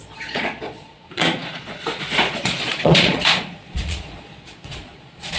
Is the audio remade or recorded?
remade